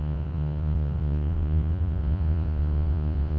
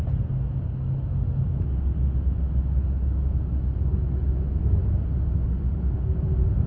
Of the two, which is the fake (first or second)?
first